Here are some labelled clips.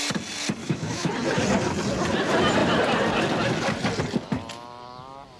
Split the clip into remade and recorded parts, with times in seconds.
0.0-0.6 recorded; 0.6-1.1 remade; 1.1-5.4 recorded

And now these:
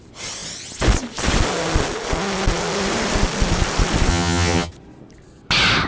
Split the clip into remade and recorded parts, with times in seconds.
0.0-4.1 recorded; 4.1-4.7 remade; 4.7-5.9 recorded

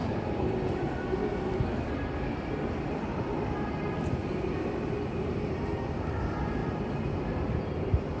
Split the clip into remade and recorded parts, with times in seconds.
0.0-8.2 remade

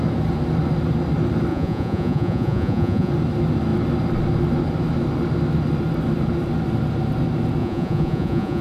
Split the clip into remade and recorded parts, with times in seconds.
0.0-1.5 recorded; 1.5-3.1 remade; 3.1-7.6 recorded; 7.6-8.6 remade